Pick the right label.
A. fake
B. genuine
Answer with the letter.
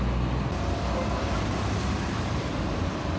B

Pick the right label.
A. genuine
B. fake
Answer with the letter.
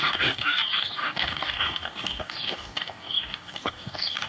B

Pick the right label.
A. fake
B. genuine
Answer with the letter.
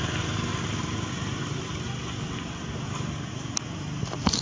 B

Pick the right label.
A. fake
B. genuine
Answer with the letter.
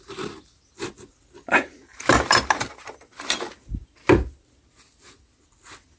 B